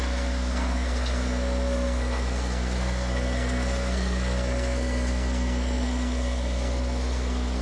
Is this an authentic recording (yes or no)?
no